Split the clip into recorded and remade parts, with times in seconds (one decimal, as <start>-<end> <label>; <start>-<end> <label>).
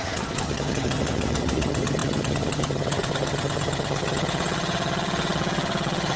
0.0-6.2 remade